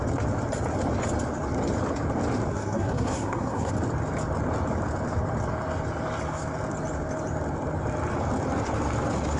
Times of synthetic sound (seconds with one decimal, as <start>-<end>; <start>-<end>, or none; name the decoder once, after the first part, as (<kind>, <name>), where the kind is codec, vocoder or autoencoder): 2.5-3.7 (codec, SNAC)